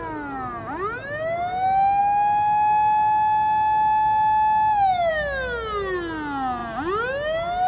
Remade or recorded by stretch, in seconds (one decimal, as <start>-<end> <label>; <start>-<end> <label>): 0.0-7.7 recorded